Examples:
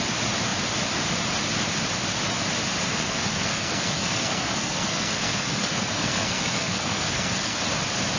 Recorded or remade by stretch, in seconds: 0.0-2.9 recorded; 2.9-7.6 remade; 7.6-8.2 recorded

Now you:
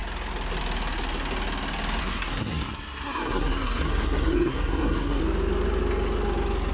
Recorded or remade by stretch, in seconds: 0.0-2.0 recorded; 2.0-5.2 remade; 5.2-6.7 recorded

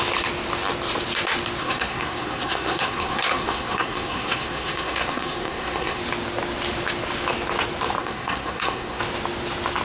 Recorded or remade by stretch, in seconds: 0.0-1.6 recorded; 1.6-6.0 remade; 6.0-8.0 recorded; 8.0-9.0 remade; 9.0-9.8 recorded

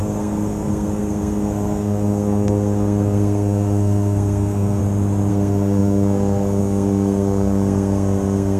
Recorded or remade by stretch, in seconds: 0.0-4.8 remade; 4.8-5.3 recorded; 5.3-8.6 remade

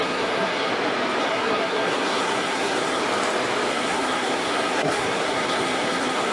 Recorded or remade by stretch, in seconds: 0.0-0.7 remade; 0.7-1.2 recorded; 1.2-3.0 remade; 3.0-3.7 recorded; 3.7-6.3 remade